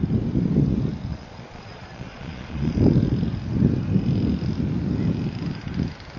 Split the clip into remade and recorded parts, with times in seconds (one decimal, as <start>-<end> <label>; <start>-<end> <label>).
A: 0.0-1.1 recorded; 1.1-2.7 remade; 2.7-6.2 recorded